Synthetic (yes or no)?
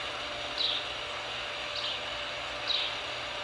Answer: no